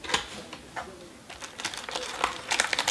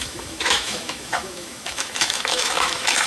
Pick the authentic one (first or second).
first